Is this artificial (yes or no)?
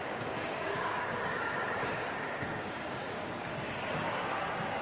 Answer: yes